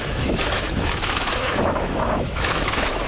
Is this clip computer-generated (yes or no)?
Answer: yes